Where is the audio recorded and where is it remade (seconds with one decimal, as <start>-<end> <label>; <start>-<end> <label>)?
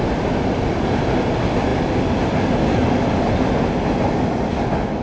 0.0-2.6 recorded; 2.6-3.3 remade; 3.3-5.0 recorded